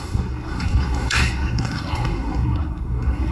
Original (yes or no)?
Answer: no